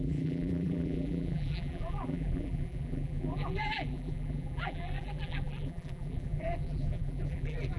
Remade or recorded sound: remade